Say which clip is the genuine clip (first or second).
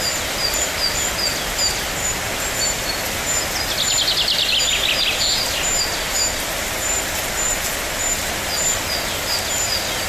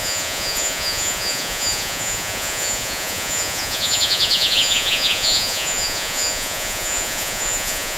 first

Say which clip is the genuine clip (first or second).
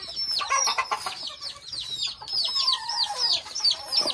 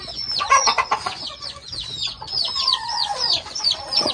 first